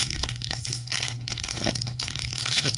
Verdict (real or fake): fake